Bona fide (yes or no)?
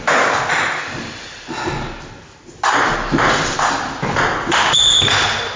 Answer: yes